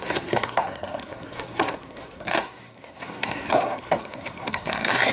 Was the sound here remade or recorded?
remade